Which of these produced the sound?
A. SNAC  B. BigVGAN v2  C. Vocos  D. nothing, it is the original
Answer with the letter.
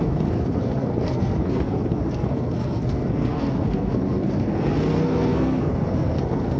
A